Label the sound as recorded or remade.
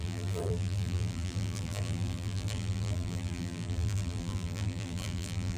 remade